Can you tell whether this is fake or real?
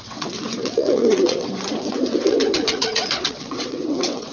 fake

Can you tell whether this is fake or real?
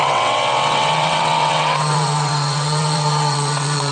fake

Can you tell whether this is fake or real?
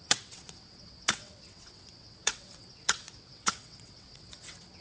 fake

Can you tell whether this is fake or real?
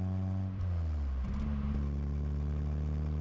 real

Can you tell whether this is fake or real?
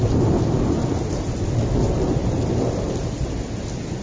real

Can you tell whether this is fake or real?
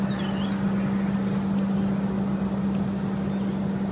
real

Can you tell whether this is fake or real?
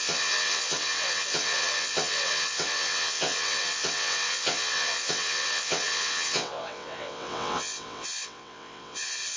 fake